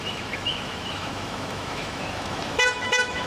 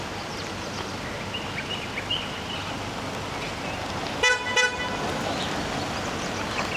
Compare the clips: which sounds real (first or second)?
second